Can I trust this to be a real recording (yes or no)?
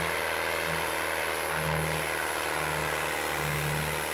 yes